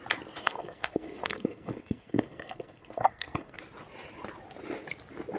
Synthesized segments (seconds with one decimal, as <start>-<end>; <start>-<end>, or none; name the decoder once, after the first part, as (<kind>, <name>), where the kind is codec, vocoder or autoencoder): 0.4-3.6 (codec, SNAC)